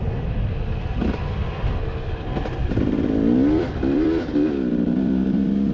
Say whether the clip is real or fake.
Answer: fake